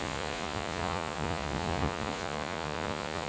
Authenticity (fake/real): fake